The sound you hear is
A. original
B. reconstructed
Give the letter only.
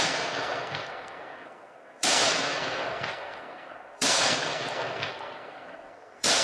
B